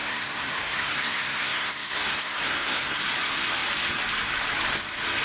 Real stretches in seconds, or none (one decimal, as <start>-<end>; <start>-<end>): 3.0-5.2